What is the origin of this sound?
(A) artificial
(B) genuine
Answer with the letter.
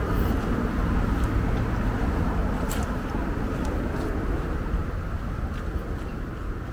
B